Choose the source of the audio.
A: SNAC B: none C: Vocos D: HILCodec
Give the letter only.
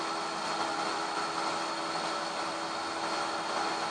B